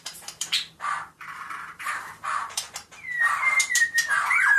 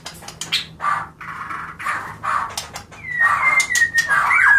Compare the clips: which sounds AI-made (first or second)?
first